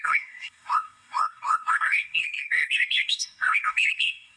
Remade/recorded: remade